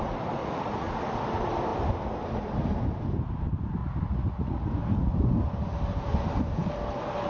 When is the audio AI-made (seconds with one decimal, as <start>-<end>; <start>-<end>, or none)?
0.4-1.0; 3.8-4.7